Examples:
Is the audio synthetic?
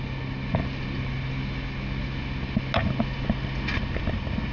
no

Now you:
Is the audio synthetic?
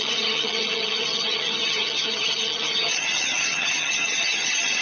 yes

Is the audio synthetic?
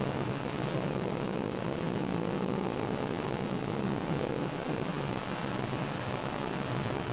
yes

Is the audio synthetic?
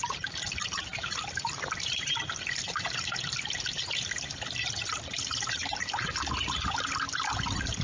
no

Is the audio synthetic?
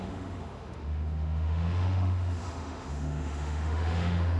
yes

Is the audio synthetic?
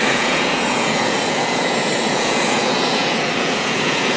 yes